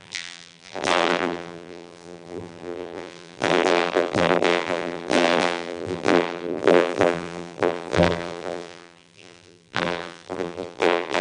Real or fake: fake